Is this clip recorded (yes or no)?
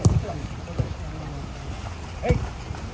yes